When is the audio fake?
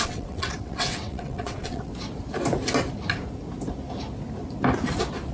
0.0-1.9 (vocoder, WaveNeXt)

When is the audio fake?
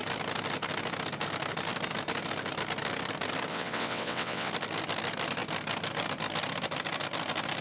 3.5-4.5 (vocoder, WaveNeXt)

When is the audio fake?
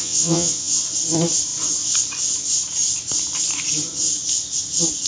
0.0-0.8 (vocoder, WaveNeXt)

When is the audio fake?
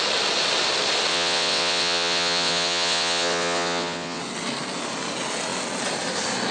1.1-4.2 (vocoder, WaveNeXt)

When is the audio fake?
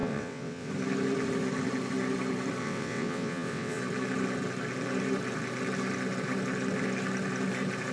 0.0-0.7 (vocoder, WaveNeXt); 2.6-3.8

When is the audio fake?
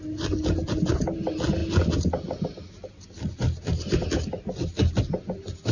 none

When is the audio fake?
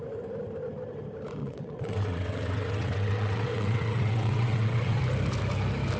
1.4-5.0 (vocoder, WaveNeXt)